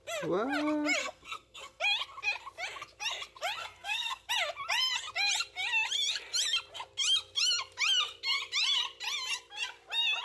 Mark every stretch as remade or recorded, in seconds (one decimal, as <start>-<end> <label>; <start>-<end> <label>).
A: 0.0-1.0 recorded; 1.0-1.8 remade; 1.8-3.6 recorded; 3.6-4.3 remade; 4.3-10.2 recorded